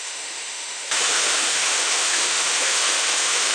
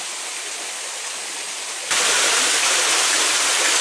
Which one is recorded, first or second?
second